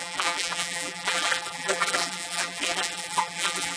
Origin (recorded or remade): remade